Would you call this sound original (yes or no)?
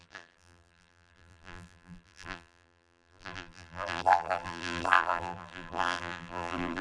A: no